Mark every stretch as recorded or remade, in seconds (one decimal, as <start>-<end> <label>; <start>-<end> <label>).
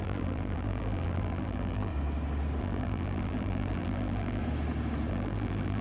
0.0-1.9 remade; 1.9-2.6 recorded; 2.6-4.4 remade; 4.4-5.1 recorded; 5.1-5.8 remade